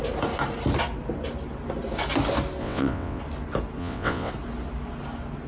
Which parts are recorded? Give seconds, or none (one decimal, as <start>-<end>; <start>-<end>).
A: 0.0-2.6; 3.2-3.8; 4.3-5.5